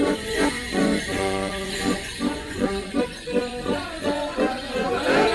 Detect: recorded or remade remade